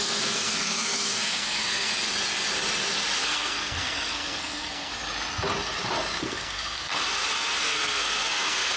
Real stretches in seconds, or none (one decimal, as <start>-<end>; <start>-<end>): 1.9-3.2; 4.9-6.2; 6.9-7.6